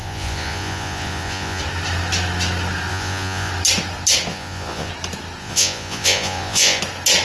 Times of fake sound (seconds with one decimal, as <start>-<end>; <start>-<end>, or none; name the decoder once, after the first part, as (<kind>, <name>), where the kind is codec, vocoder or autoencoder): 0.0-1.6 (vocoder, Vocos); 2.9-3.5; 4.3-4.9; 5.4-6.8